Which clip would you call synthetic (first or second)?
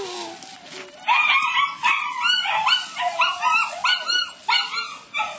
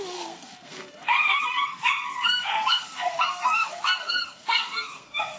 second